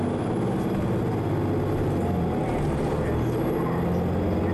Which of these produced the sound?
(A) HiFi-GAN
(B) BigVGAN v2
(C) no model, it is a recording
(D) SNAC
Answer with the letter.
C